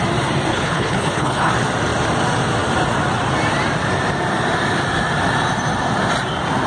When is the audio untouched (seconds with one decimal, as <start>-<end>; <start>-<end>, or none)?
0.0-0.5; 1.5-6.7